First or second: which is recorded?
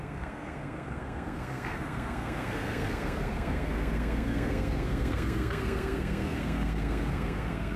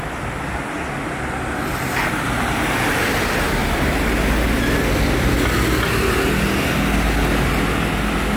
second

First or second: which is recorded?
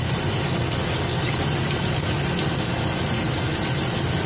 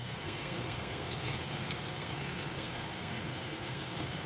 first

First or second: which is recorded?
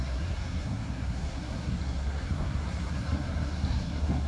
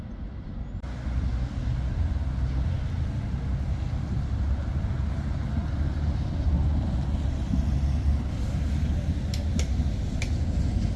second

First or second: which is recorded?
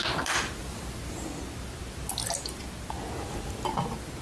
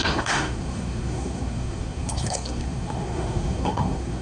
first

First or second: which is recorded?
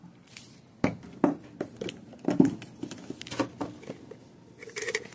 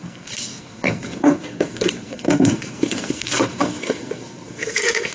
first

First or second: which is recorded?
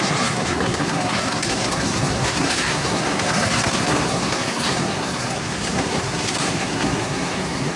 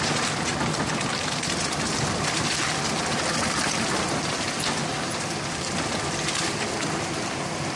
second